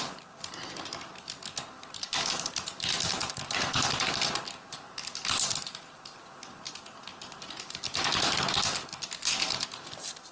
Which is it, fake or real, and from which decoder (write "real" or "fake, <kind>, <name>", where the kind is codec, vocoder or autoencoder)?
real